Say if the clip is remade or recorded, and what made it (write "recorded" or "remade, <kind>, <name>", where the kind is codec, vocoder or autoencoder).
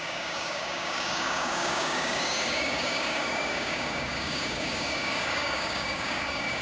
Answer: remade, codec, DAC